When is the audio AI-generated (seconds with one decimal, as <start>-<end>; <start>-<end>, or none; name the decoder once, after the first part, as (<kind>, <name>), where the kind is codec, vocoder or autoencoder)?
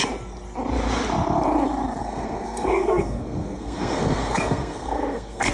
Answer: 2.0-5.5 (codec, SNAC)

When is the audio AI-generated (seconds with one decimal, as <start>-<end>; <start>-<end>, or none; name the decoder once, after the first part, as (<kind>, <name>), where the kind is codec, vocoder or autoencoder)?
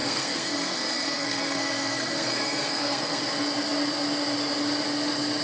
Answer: 0.0-3.2 (codec, SNAC)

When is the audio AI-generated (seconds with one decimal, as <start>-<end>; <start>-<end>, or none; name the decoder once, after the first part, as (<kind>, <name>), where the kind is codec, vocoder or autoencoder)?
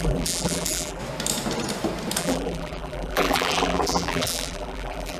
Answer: 0.0-1.0 (vocoder, BigVGAN v2); 2.2-5.2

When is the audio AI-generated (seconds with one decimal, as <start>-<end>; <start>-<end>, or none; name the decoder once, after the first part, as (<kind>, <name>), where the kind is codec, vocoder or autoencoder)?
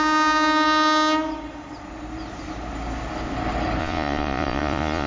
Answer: 3.8-5.1 (vocoder, Vocos)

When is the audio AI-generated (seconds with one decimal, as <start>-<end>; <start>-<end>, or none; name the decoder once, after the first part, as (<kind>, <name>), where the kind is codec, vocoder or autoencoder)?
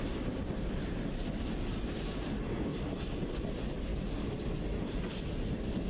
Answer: 2.7-3.4 (vocoder, BigVGAN v2); 3.9-5.0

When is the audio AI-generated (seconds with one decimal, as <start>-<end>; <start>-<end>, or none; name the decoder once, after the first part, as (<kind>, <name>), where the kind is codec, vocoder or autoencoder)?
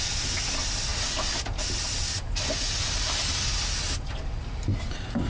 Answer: none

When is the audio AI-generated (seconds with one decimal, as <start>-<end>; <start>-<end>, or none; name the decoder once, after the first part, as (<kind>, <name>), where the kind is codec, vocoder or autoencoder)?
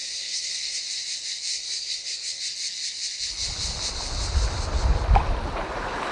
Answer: 0.0-0.8 (codec, SNAC); 1.5-2.4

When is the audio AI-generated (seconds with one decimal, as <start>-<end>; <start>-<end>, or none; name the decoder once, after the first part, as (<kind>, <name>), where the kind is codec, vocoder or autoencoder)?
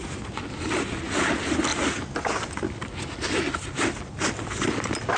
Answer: none